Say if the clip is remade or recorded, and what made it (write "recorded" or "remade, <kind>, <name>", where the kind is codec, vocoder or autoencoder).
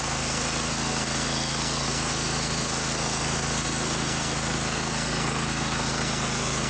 remade, codec, SNAC